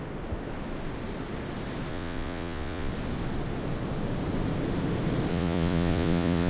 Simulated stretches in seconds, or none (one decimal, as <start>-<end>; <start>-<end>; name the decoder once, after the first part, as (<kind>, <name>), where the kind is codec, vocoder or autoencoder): 1.9-2.9 (vocoder, Vocos); 5.3-6.5